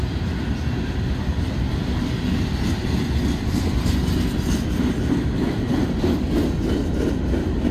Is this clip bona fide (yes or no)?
yes